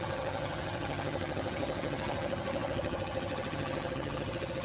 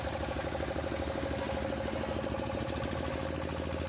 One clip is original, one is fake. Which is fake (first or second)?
first